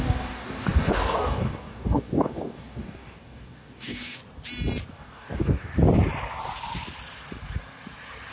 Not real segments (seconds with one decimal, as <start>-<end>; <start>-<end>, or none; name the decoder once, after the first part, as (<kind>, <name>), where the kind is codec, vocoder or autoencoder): 0.0-4.2 (codec, DAC); 4.9-5.7